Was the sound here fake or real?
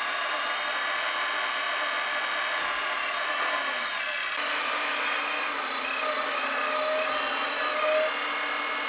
real